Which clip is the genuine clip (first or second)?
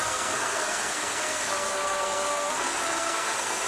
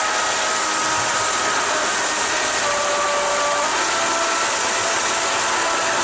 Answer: second